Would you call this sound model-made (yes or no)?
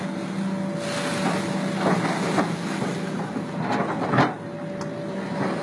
no